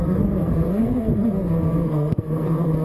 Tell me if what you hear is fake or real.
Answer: fake